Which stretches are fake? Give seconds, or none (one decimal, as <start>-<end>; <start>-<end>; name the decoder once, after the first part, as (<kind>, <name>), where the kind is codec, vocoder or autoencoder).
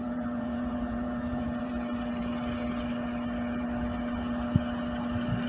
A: 0.0-1.7 (vocoder, Vocos)